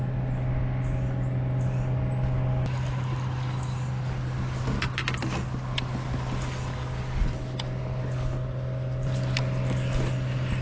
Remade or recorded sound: recorded